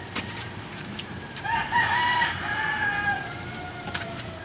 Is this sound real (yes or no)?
no